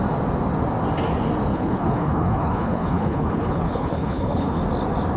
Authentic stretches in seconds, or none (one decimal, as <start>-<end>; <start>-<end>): 0.0-1.5; 4.6-5.2